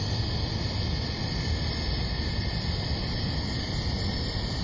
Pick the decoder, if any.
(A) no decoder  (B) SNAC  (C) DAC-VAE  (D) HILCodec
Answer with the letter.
A